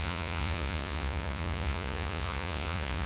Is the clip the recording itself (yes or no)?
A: no